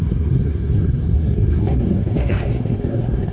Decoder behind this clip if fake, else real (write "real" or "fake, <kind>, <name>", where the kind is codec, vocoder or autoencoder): fake, codec, SNAC